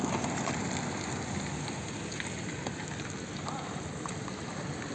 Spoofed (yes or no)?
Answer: no